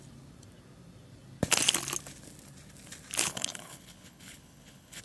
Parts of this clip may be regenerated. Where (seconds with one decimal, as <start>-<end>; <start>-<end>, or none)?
3.2-5.0